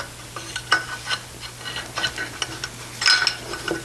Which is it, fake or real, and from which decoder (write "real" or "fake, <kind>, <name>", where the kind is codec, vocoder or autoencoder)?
real